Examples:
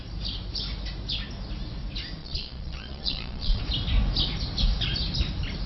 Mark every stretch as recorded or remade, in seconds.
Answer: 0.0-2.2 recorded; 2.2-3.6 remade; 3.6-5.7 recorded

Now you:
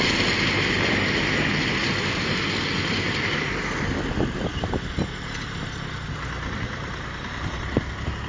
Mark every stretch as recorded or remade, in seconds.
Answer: 0.0-8.3 recorded

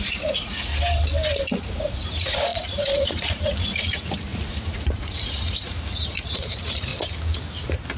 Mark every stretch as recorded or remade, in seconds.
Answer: 0.0-0.7 remade; 0.7-1.6 recorded; 1.6-6.9 remade; 6.9-8.0 recorded

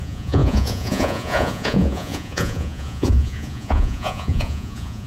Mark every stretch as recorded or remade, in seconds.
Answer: 0.0-5.1 remade